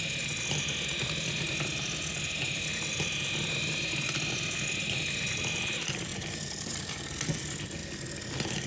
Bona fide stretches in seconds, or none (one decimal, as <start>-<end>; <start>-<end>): 0.0-6.1; 6.8-8.7